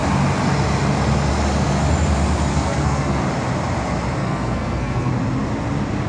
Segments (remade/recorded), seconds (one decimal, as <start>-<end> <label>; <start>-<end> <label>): 0.0-2.5 recorded; 2.5-3.2 remade; 3.2-4.2 recorded; 4.2-5.1 remade; 5.1-6.1 recorded